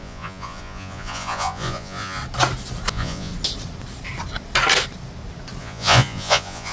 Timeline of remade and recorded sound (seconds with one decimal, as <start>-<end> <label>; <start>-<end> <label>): 0.0-2.2 remade; 2.2-2.9 recorded; 2.9-3.3 remade; 3.3-5.6 recorded; 5.6-6.7 remade